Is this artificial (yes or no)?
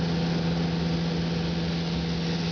no